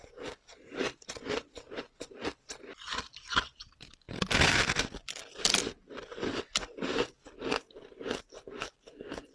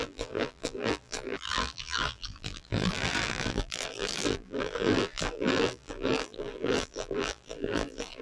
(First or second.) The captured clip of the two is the first